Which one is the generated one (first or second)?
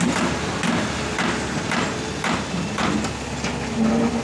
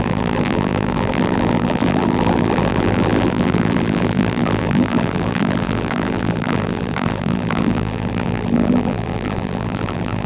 second